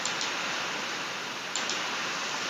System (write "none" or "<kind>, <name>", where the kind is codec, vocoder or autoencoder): none